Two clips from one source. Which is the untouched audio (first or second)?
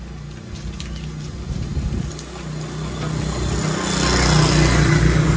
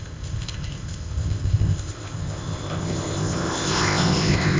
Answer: first